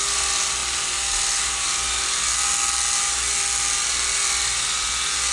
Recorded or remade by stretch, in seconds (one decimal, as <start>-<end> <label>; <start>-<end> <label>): 0.0-5.3 recorded